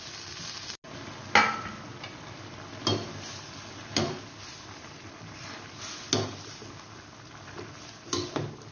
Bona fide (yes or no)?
yes